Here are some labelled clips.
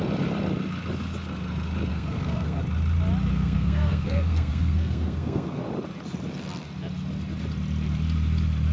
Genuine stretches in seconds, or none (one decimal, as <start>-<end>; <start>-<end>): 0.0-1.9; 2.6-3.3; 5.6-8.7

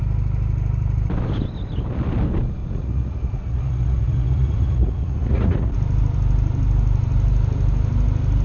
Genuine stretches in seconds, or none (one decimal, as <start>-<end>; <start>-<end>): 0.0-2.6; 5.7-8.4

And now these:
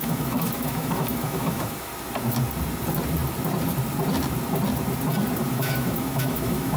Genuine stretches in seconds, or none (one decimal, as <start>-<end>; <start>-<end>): 1.9-5.5

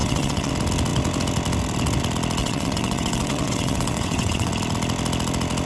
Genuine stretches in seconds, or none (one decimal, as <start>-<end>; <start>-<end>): 0.5-2.4; 4.5-5.6

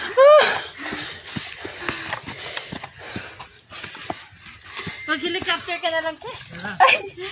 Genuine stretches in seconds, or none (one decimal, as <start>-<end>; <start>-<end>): 0.0-7.3